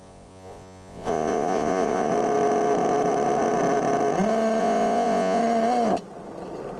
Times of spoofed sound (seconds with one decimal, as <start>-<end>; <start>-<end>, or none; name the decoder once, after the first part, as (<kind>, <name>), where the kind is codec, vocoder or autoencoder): 0.0-2.1 (vocoder, Vocos); 4.6-5.4